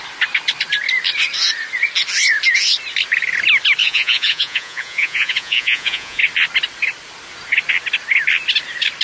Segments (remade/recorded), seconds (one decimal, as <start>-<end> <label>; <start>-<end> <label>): 0.0-3.8 recorded; 3.8-6.2 remade; 6.2-9.0 recorded